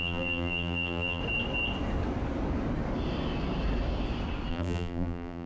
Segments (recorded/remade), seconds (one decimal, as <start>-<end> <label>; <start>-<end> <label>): 0.0-1.2 remade; 1.2-4.5 recorded; 4.5-5.5 remade